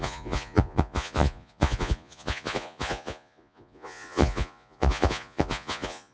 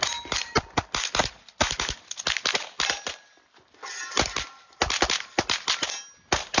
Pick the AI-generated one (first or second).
first